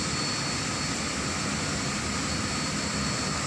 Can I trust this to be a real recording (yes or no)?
yes